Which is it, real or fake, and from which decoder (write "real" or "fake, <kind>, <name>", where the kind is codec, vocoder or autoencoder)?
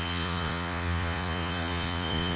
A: fake, vocoder, Vocos